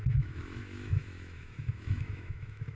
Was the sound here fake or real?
fake